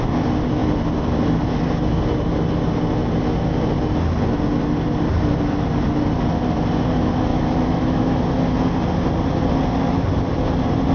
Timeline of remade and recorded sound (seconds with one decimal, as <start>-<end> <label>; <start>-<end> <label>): 0.0-7.3 recorded; 7.3-8.2 remade; 8.2-10.9 recorded